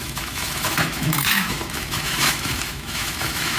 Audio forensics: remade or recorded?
remade